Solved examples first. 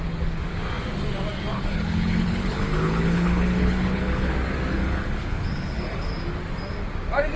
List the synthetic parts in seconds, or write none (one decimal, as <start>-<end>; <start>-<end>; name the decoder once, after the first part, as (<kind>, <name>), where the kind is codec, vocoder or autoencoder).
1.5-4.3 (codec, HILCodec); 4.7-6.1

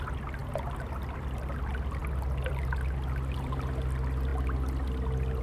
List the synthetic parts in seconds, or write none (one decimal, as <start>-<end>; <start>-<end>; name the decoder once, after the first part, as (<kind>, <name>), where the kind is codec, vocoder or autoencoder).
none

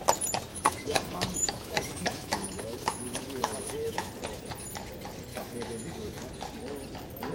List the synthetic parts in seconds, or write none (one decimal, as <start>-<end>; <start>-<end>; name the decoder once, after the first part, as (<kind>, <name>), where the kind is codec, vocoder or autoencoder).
0.5-4.1 (autoencoder, DAC-VAE); 5.3-6.3